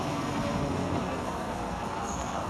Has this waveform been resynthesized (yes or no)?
yes